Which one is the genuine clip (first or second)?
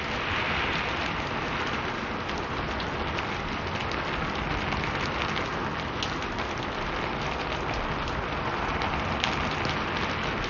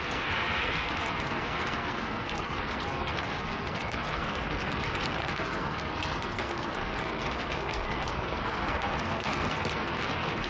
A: first